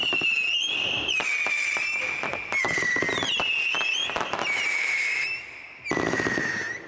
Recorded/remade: recorded